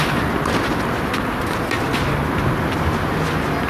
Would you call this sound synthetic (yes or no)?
no